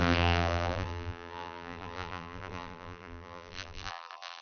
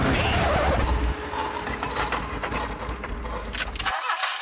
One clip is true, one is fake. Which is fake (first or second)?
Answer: first